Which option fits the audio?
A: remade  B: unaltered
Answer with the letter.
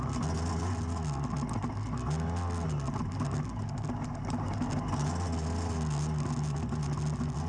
B